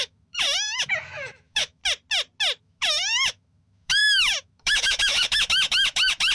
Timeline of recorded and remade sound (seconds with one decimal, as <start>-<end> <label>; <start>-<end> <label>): 0.0-1.8 remade; 1.8-2.6 recorded; 2.6-6.3 remade